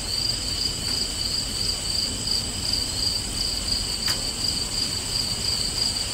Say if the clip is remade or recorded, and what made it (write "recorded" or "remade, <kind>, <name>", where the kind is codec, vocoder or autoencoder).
recorded